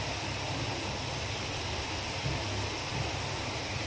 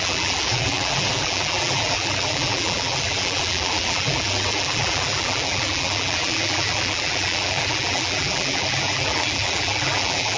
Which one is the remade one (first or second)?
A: second